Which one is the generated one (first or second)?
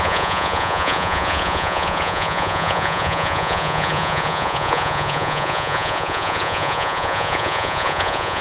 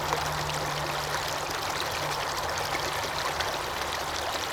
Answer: first